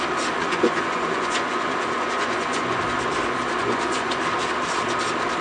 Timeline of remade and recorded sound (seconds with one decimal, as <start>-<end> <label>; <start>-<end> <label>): 0.0-0.4 recorded; 0.4-2.8 remade; 2.8-3.6 recorded; 3.6-4.2 remade; 4.2-5.4 recorded